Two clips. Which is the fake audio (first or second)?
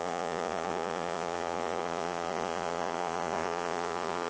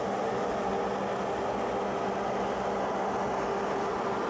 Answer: first